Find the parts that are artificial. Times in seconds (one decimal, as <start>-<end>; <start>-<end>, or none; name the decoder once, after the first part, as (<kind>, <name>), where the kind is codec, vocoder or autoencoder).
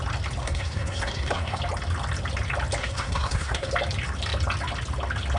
0.4-1.6 (codec, SNAC); 2.8-3.7